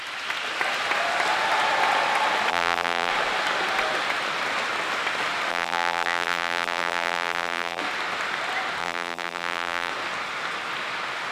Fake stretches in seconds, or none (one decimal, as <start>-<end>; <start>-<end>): 2.5-3.1; 5.5-7.8; 8.8-9.9